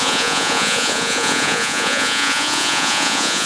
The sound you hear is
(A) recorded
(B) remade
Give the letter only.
B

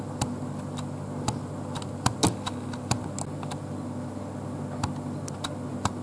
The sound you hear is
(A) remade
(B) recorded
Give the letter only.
B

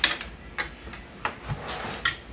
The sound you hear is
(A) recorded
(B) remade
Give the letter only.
A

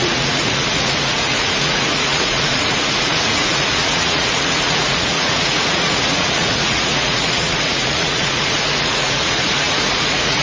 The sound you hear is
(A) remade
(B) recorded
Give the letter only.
A